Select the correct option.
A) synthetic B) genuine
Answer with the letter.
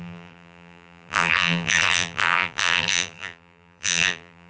A